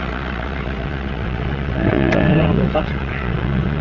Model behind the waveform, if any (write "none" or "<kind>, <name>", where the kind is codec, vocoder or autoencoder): vocoder, WaveNeXt